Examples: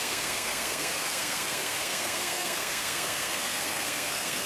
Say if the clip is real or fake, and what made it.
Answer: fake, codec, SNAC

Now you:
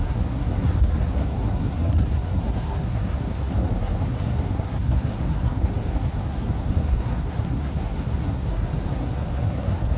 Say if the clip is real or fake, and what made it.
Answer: fake, codec, SNAC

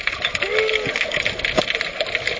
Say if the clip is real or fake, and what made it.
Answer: real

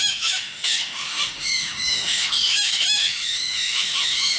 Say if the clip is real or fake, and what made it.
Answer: fake, autoencoder, DAC-VAE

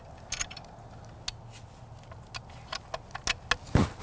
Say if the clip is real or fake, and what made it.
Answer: real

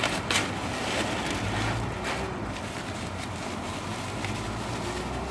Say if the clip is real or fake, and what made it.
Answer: real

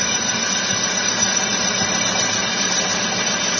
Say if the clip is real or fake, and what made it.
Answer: real